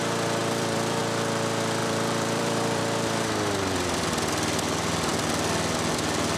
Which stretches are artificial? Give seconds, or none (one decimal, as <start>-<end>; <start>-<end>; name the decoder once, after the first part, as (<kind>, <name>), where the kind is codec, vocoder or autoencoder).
0.4-1.0 (vocoder, BigVGAN v2); 1.8-2.8